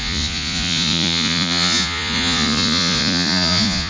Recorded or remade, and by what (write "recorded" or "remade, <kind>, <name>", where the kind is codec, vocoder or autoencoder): remade, vocoder, Vocos